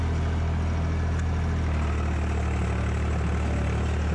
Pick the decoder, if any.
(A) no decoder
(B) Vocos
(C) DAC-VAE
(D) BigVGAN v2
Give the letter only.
A